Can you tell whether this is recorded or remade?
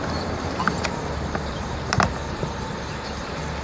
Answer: remade